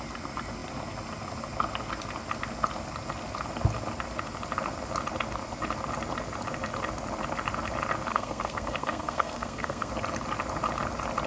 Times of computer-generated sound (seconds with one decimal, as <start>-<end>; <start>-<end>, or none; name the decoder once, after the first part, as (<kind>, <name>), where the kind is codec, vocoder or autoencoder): 8.1-9.9 (codec, SNAC)